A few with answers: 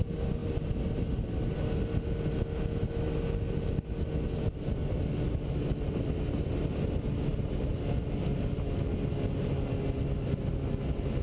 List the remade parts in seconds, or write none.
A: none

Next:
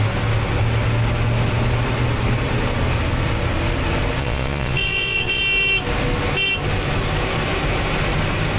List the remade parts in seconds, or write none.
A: 4.2-5.4